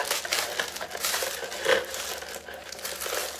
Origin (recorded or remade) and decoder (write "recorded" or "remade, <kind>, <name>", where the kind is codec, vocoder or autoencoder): recorded